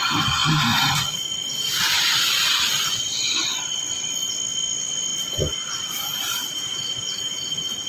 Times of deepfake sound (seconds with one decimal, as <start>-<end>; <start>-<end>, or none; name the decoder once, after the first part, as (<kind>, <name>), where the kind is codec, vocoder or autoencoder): none